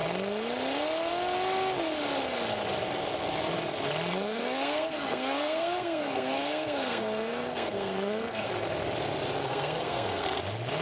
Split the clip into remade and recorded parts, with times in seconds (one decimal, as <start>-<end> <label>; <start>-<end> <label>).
0.0-4.1 recorded; 4.1-8.5 remade; 8.5-9.4 recorded; 9.4-10.4 remade; 10.4-10.8 recorded